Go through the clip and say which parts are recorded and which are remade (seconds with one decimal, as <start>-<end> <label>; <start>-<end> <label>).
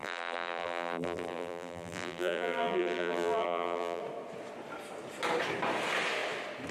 0.0-4.0 remade; 4.0-6.7 recorded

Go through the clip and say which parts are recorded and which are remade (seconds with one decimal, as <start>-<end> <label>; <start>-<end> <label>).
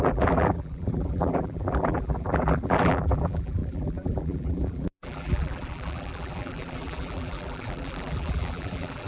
0.0-9.1 remade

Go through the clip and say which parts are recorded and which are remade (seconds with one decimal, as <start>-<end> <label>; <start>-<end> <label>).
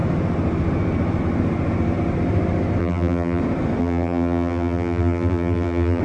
0.0-2.8 recorded; 2.8-3.4 remade; 3.4-3.8 recorded; 3.8-6.0 remade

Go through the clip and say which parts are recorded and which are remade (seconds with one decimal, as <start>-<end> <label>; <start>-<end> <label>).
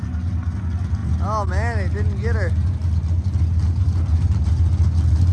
0.0-5.3 recorded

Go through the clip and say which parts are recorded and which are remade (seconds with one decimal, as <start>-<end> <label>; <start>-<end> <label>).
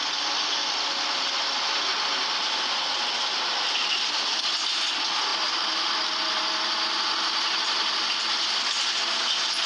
0.0-9.7 recorded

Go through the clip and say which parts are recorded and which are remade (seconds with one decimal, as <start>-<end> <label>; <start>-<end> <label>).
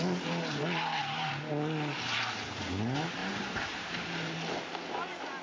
0.0-3.2 recorded; 3.2-4.5 remade; 4.5-5.4 recorded